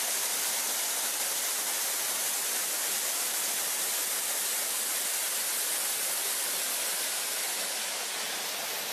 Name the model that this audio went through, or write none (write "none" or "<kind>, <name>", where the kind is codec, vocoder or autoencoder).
none